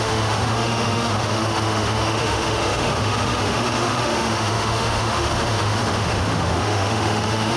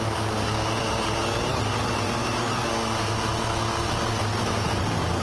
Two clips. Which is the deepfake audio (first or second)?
first